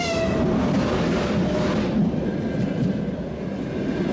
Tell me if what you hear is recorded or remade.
recorded